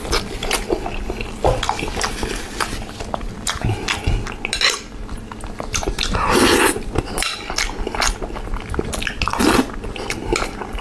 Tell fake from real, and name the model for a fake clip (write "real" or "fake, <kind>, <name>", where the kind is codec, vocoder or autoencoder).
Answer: real